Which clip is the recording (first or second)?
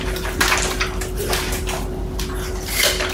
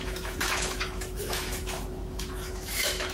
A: first